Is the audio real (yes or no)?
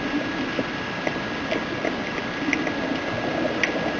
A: yes